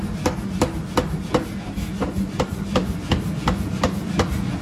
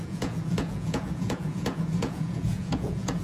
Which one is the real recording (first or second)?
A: first